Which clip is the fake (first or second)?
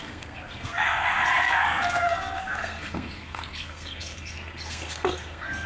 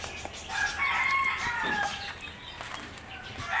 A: first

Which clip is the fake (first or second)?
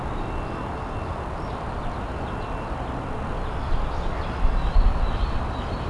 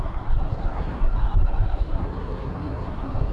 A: second